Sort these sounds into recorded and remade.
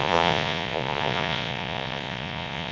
remade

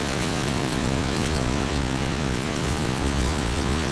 remade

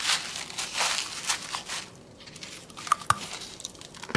recorded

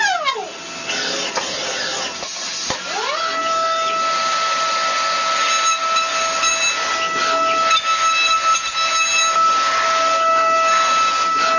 recorded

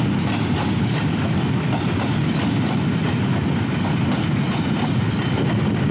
recorded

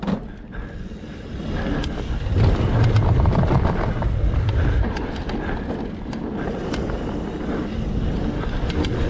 recorded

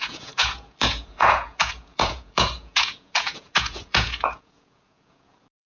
remade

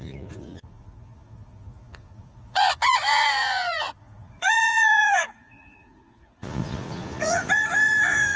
remade